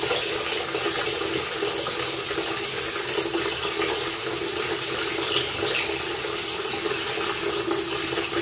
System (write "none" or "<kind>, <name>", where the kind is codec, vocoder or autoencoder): none